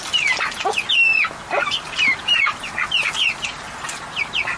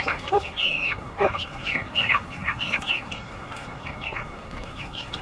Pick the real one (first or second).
first